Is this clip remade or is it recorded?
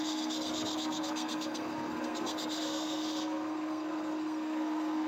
remade